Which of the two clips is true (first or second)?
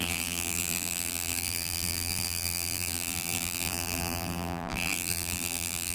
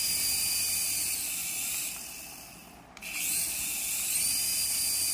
second